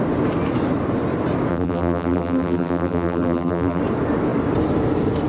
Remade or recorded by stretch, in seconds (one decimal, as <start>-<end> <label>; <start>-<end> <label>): 0.0-1.5 recorded; 1.5-3.8 remade; 3.8-5.3 recorded

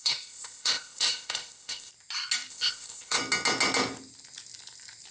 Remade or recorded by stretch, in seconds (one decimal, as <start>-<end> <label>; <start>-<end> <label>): 0.0-1.9 remade; 1.9-2.5 recorded; 2.5-3.2 remade; 3.2-5.1 recorded

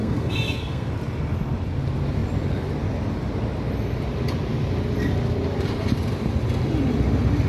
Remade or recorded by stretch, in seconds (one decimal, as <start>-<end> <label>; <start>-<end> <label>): 0.0-0.9 remade; 0.9-7.5 recorded

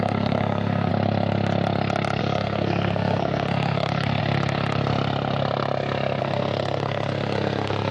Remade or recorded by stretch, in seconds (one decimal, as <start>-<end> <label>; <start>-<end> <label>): 0.0-0.9 remade; 0.9-2.2 recorded; 2.2-4.2 remade; 4.2-6.2 recorded; 6.2-7.9 remade

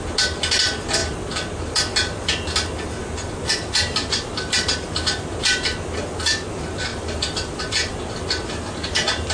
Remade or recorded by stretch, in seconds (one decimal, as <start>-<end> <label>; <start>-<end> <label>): 0.0-6.9 recorded; 6.9-7.6 remade; 7.6-9.3 recorded

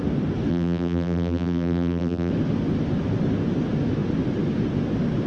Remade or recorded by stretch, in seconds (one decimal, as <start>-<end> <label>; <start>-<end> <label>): 0.0-0.5 recorded; 0.5-2.3 remade; 2.3-5.3 recorded